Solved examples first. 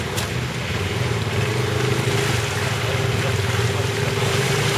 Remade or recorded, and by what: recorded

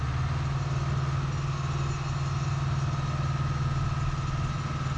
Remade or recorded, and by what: recorded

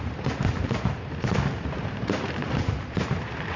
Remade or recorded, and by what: remade, vocoder, BigVGAN v2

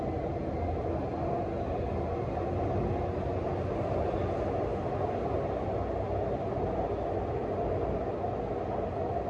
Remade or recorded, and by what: recorded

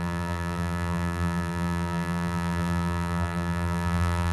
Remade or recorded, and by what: remade, vocoder, BigVGAN v2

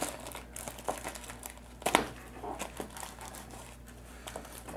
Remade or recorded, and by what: recorded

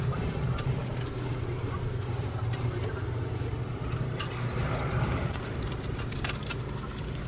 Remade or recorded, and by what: remade, vocoder, BigVGAN v2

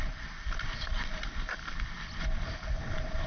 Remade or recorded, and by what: remade, vocoder, BigVGAN v2